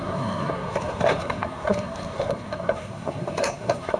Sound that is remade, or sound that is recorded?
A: remade